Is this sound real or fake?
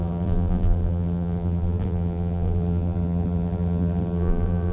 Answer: fake